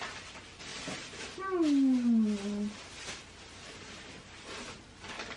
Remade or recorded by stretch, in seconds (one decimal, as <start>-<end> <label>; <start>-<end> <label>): 0.0-5.4 recorded